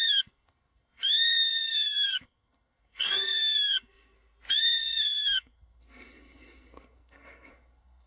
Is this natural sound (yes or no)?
no